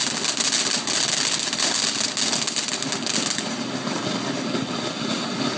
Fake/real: real